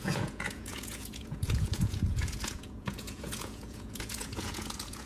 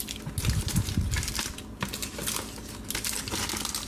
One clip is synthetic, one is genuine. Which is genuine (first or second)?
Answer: second